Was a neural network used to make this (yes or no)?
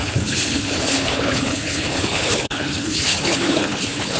yes